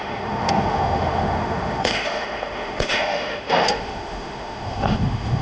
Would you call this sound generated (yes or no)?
yes